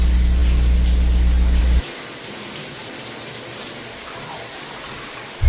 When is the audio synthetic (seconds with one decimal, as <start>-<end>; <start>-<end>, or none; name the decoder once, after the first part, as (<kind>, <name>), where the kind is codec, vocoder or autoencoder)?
0.0-0.4 (vocoder, BigVGAN v2); 1.6-5.5